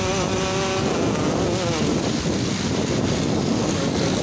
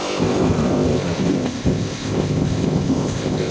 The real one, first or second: first